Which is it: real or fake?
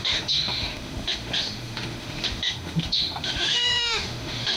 fake